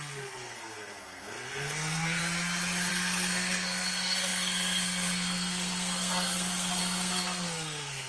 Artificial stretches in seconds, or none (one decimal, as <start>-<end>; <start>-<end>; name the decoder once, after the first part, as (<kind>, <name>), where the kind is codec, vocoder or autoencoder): 0.0-2.2 (codec, SNAC); 2.9-8.1